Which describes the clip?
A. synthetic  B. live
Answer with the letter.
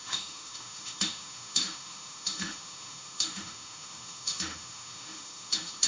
A